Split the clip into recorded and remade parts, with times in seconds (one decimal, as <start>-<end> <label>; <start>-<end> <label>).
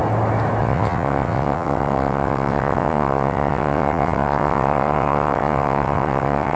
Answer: 0.0-0.6 recorded; 0.6-6.6 remade